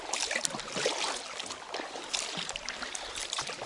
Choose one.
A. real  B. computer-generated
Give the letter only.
A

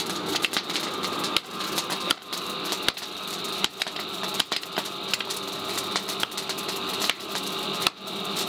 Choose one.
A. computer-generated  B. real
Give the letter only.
B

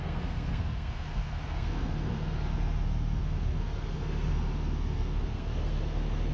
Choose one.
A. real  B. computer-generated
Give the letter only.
B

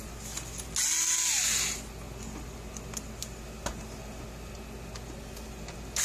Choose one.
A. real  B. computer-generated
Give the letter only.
A